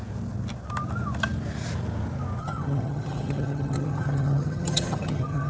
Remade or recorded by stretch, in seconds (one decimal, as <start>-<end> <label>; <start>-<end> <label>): 0.0-2.4 recorded; 2.4-5.5 remade